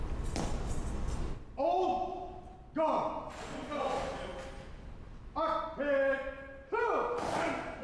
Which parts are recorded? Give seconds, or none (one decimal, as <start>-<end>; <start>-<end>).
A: 0.0-7.8